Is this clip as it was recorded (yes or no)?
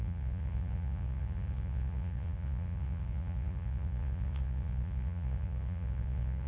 no